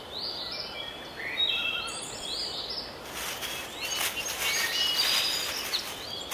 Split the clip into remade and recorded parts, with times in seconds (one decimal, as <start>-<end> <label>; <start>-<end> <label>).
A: 0.0-6.3 recorded